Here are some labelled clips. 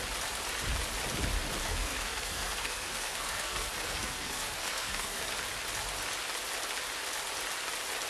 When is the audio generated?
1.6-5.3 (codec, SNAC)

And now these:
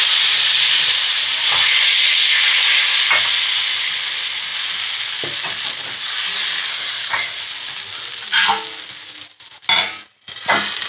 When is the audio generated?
6.7-7.4 (codec, SNAC)

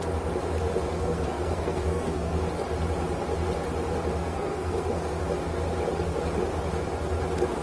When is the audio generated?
0.9-2.4 (codec, SNAC); 4.2-5.2

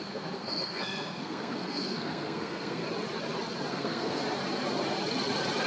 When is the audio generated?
0.0-2.8 (codec, SNAC); 3.7-4.2

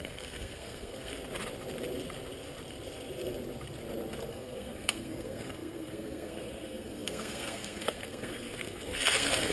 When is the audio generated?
0.0-1.1 (codec, SNAC); 4.3-9.5

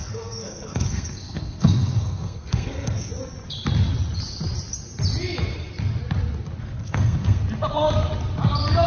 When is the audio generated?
0.0-3.1 (codec, SNAC); 6.6-7.4

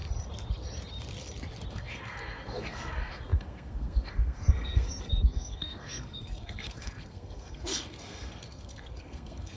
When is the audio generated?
1.7-9.6 (codec, SNAC)